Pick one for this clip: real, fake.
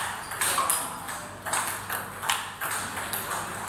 real